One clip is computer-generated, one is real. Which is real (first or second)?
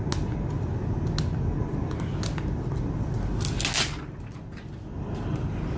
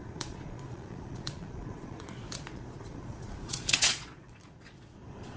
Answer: first